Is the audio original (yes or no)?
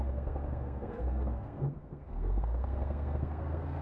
no